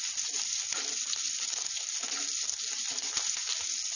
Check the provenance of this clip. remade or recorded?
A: recorded